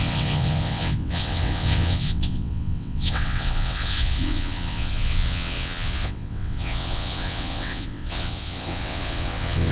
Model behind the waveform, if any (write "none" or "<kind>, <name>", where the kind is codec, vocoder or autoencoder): vocoder, WaveNeXt